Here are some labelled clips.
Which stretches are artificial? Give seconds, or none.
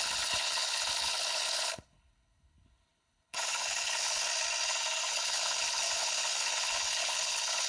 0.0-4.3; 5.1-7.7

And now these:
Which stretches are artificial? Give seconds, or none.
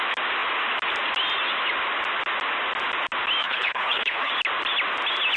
3.4-4.3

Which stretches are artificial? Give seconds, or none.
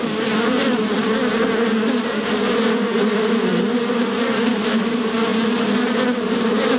none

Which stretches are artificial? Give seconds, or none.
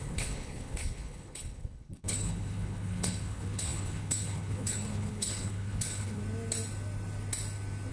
0.0-6.2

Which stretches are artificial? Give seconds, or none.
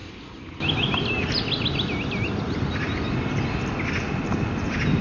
none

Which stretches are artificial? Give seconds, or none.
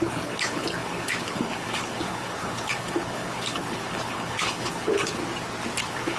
0.0-5.2; 5.8-6.2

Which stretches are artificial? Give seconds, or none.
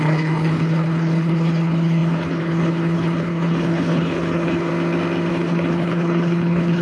0.0-4.7; 5.3-6.8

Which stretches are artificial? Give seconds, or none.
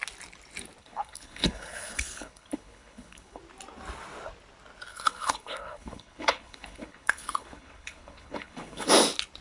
0.8-3.4; 4.9-8.9